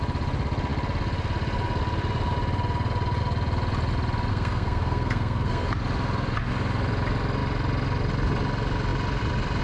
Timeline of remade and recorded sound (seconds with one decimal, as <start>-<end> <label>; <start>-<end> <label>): 0.0-4.3 recorded; 4.3-5.7 remade; 5.7-9.6 recorded